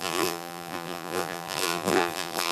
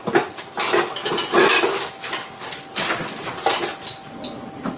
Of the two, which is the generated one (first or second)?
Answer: first